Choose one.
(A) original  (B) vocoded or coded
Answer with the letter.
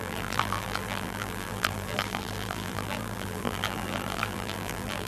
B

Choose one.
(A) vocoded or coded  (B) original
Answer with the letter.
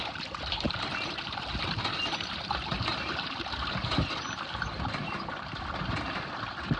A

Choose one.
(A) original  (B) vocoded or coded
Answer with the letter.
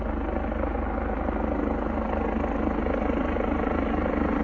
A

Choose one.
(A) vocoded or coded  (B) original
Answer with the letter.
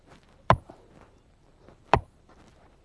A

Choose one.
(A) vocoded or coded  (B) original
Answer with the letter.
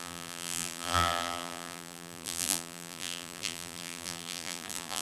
A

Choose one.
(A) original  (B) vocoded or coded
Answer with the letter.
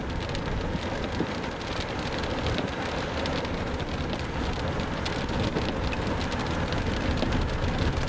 A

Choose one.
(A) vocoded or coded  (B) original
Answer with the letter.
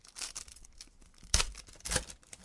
B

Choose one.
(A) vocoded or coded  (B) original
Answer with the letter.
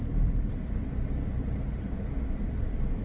A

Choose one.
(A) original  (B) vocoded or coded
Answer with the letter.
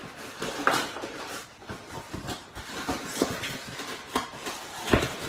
A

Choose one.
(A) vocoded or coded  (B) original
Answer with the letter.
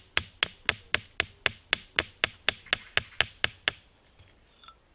B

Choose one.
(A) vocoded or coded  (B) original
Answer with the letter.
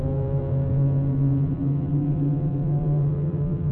A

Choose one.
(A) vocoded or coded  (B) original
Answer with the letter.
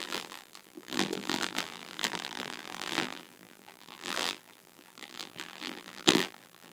A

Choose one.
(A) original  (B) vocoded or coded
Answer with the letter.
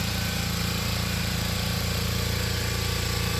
B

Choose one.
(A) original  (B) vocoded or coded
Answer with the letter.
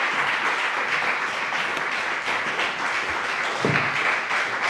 A